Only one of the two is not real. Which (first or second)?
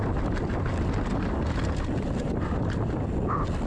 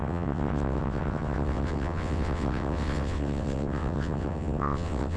second